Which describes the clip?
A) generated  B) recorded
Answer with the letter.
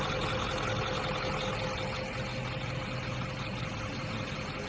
B